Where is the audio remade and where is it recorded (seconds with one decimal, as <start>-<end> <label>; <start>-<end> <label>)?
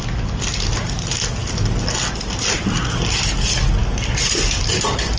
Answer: 0.0-5.2 recorded